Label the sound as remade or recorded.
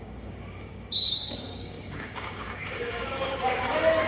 remade